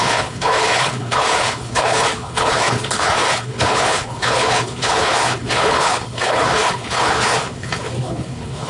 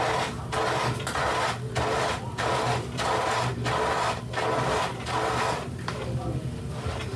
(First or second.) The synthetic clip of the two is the first